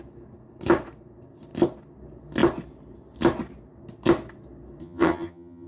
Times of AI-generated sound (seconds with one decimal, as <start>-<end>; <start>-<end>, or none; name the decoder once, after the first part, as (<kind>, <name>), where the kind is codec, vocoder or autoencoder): 4.8-5.7 (vocoder, HiFi-GAN)